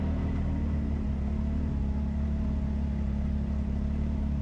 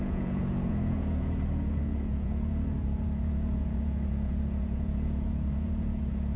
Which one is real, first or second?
first